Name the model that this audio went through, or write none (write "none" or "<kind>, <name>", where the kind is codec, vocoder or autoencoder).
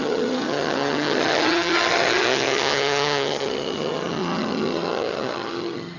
vocoder, HiFi-GAN